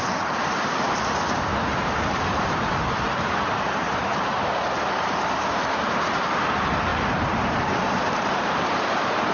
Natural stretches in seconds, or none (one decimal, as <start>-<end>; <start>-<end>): 1.5-2.0